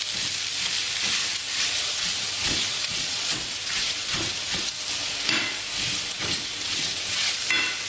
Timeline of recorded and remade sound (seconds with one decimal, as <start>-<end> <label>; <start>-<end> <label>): 0.0-1.2 recorded; 1.2-4.8 remade; 4.8-5.9 recorded; 5.9-7.4 remade; 7.4-7.9 recorded